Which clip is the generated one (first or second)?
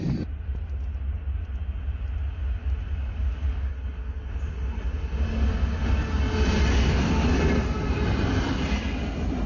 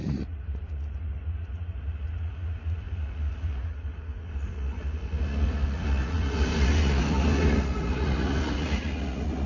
second